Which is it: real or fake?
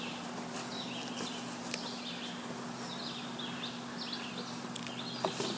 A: real